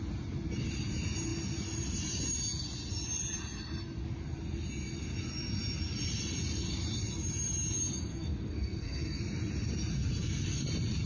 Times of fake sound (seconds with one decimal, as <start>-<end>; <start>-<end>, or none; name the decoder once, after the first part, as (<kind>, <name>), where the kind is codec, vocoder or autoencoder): 8.1-9.2 (codec, SNAC)